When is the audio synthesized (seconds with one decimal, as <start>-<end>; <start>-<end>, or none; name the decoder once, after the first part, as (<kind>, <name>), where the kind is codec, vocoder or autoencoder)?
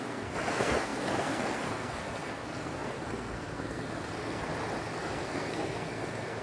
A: 0.0-4.5 (codec, SNAC); 5.0-6.4